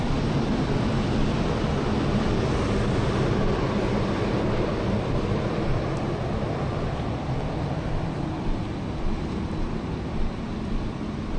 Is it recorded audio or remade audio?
recorded